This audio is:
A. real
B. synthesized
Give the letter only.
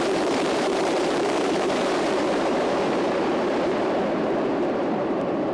B